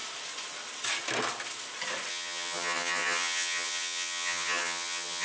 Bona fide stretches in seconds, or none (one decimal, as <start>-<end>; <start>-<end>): 0.0-2.1